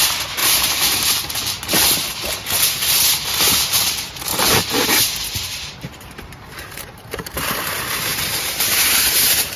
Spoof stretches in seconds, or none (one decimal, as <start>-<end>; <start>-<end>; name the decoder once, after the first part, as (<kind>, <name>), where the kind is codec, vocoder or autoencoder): 0.4-1.3 (vocoder, BigVGAN v2); 4.3-7.6; 8.1-9.6